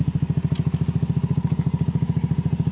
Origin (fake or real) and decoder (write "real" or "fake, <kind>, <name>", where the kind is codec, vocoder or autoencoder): real